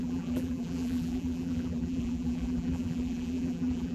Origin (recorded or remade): remade